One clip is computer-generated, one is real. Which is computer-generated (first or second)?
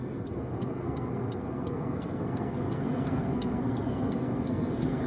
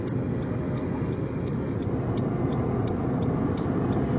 first